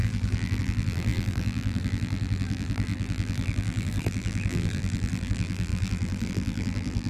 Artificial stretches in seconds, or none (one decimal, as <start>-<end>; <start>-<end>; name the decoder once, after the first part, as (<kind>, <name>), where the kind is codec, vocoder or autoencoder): 0.0-7.1 (vocoder, BigVGAN v2)